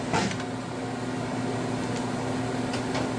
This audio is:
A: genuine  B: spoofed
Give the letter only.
A